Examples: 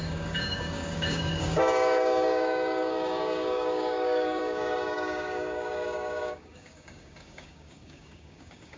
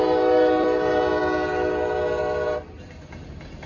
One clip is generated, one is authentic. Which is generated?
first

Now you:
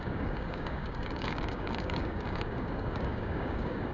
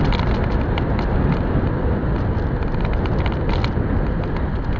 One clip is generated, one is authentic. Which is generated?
first